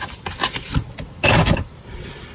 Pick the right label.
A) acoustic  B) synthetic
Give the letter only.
A